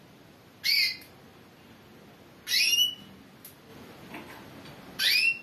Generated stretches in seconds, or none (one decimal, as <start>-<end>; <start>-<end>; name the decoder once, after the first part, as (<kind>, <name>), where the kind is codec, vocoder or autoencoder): none